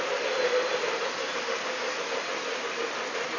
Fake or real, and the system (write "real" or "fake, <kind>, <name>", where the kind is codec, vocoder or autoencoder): real